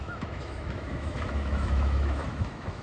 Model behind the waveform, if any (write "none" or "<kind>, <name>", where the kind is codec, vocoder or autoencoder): autoencoder, DAC-VAE